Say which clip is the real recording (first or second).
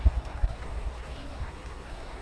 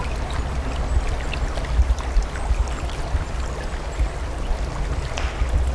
second